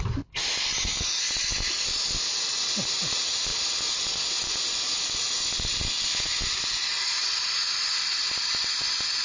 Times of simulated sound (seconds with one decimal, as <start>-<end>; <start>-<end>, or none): none